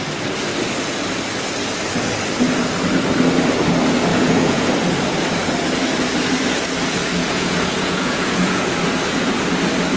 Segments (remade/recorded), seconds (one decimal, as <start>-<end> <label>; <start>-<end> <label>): 0.0-4.1 recorded; 4.1-4.7 remade; 4.7-7.2 recorded; 7.2-8.6 remade; 8.6-10.0 recorded